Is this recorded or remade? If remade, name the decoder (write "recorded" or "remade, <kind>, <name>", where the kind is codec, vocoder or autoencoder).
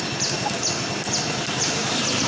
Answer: recorded